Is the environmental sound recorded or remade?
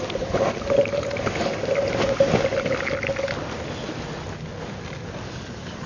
recorded